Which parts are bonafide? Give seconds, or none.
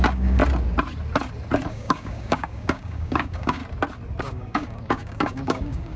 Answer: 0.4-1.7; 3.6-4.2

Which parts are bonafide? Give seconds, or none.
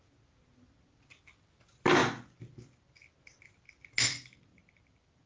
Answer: 0.0-5.3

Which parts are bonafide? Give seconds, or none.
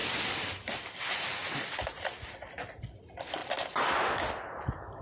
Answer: 0.0-5.0